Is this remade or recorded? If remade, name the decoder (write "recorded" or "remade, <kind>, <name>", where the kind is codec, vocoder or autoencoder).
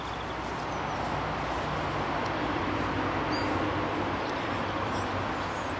recorded